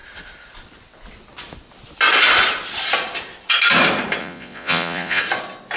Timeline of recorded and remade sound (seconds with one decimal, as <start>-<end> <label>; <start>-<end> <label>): 0.0-4.2 recorded; 4.2-5.2 remade; 5.2-5.8 recorded